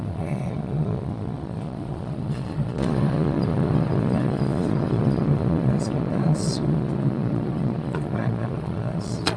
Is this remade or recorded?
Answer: remade